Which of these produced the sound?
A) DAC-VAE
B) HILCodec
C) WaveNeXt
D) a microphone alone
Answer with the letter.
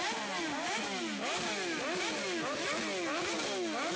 D